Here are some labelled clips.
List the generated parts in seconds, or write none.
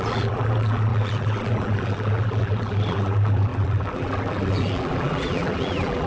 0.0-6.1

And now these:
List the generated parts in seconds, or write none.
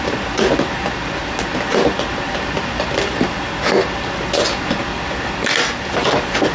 1.5-3.6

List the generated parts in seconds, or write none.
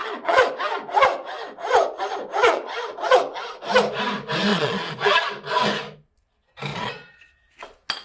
0.0-0.5; 2.4-3.2; 4.5-5.3; 6.7-7.5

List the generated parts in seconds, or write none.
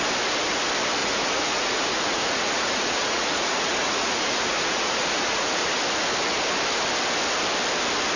1.0-5.8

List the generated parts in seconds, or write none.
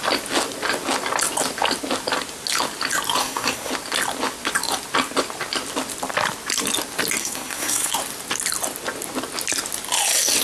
3.2-3.7; 7.2-7.9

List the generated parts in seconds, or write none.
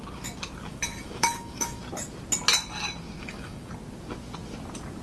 0.7-1.8; 3.2-3.7